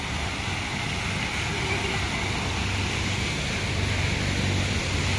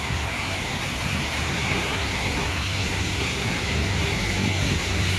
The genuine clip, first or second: first